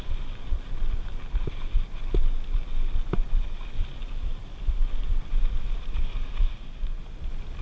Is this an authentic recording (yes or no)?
yes